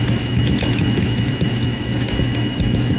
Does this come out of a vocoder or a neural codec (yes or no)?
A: yes